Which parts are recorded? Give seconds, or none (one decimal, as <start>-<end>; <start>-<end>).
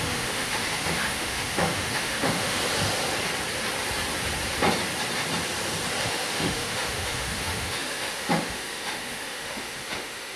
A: 2.6-6.0